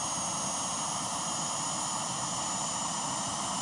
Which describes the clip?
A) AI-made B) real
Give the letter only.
B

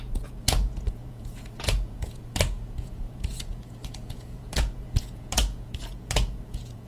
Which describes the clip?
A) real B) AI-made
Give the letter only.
B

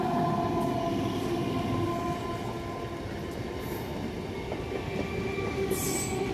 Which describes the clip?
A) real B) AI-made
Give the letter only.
A